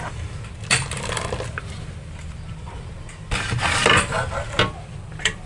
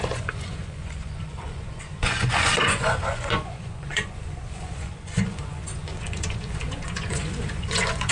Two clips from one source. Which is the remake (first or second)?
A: second